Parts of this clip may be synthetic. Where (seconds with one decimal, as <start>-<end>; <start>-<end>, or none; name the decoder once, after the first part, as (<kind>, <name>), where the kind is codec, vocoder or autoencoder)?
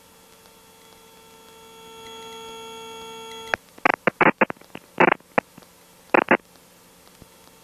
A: none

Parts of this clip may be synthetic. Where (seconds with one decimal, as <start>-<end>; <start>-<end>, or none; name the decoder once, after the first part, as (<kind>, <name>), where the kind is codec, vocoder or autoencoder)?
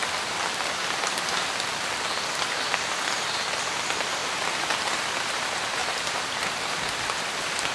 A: 0.0-4.2 (vocoder, BigVGAN v2); 4.8-5.8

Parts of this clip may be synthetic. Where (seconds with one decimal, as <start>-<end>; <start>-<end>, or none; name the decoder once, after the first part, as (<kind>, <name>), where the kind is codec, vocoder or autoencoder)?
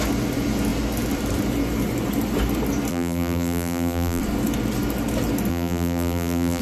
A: 2.9-4.2 (vocoder, BigVGAN v2); 5.5-6.6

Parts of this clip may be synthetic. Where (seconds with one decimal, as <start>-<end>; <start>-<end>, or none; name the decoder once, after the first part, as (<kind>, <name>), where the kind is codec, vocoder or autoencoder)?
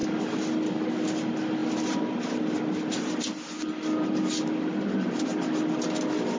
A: none